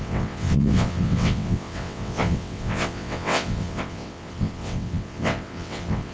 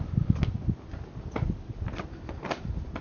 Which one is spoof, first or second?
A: first